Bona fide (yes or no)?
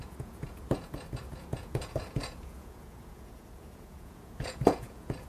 no